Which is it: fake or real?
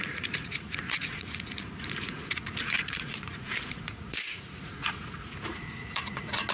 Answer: fake